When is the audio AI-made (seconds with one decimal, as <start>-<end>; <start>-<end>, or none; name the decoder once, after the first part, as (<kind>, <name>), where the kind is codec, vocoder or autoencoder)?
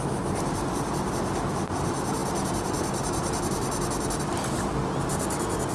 none